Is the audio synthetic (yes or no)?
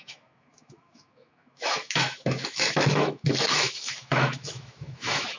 yes